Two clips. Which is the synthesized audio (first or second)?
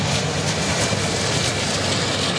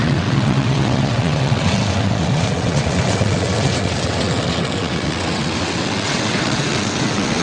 second